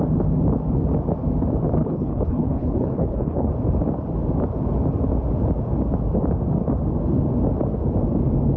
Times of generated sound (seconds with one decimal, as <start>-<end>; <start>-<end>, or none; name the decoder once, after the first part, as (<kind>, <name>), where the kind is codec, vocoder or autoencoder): 1.8-3.5 (codec, HILCodec)